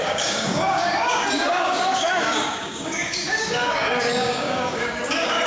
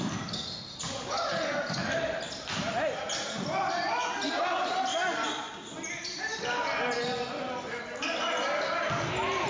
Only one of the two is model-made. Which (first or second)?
first